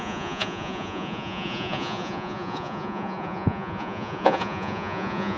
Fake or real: fake